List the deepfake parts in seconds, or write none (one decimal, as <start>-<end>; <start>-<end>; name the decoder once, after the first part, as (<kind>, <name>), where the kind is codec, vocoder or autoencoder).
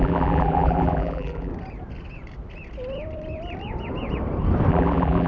0.0-1.5 (vocoder, BigVGAN v2); 4.7-5.3